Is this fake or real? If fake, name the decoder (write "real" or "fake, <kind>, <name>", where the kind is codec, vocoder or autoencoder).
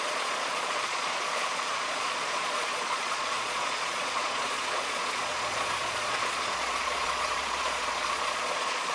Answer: fake, vocoder, Vocos